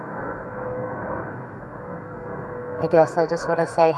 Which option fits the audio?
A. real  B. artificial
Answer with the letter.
B